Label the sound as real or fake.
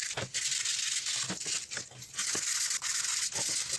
real